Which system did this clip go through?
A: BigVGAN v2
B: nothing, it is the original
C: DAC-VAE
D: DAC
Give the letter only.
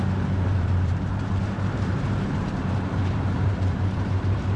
A